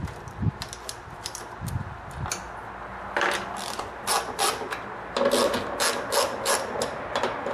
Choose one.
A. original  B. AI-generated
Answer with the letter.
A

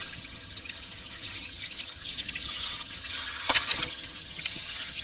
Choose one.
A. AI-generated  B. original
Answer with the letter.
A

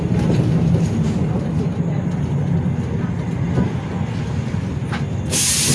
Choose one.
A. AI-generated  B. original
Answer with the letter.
B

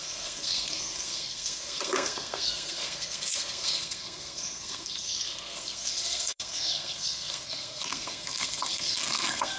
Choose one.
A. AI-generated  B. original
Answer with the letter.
A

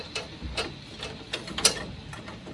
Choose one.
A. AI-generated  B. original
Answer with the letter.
B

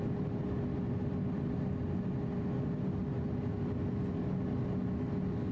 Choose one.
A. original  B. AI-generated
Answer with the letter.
A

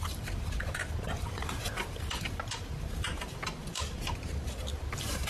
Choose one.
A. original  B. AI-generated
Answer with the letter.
B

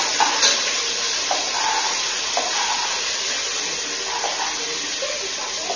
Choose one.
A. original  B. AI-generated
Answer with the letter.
A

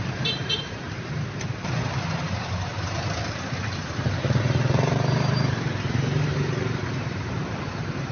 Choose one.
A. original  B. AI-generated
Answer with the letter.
B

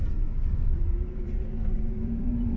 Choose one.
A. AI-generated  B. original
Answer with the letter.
A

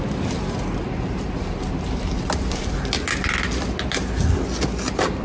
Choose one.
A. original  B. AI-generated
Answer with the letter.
A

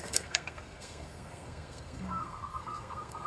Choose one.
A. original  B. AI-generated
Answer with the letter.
B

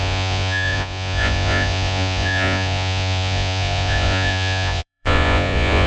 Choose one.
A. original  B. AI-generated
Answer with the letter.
B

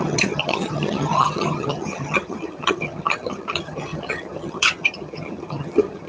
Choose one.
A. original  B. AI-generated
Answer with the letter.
B